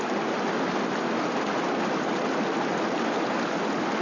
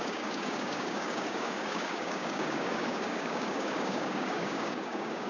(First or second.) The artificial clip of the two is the second